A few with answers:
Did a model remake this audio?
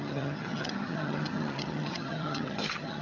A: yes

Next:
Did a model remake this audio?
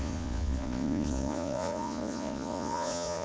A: yes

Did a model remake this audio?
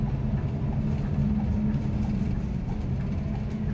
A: no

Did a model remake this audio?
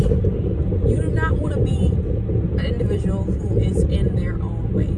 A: no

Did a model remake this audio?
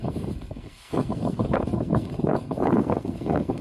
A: yes